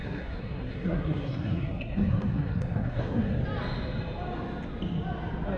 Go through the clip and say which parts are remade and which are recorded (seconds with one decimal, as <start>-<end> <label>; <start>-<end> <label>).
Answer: 0.0-3.4 remade; 3.4-5.6 recorded